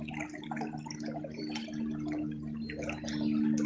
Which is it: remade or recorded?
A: recorded